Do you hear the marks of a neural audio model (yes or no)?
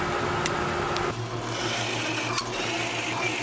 no